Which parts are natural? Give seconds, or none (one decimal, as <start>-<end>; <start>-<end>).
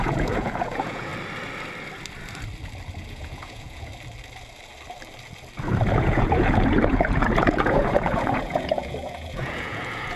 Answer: 1.1-3.0; 3.9-5.9